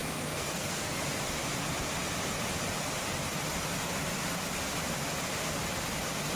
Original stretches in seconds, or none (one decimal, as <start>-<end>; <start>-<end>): 1.0-6.4